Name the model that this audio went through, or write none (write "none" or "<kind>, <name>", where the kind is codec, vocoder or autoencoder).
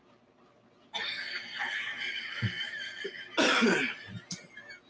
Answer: none